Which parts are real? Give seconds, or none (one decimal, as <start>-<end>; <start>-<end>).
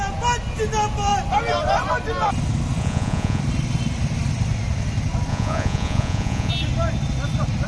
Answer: 0.0-2.8; 3.4-5.3; 6.5-7.7